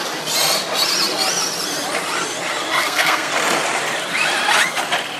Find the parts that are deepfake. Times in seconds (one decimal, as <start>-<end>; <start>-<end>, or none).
2.8-3.3